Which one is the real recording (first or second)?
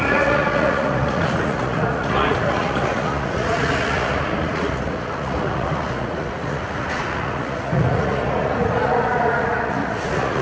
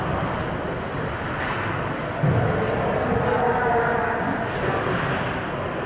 second